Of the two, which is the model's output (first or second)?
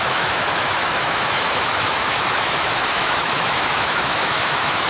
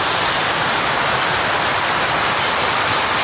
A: first